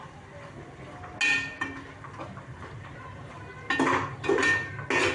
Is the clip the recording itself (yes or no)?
yes